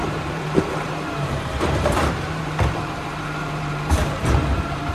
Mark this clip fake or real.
fake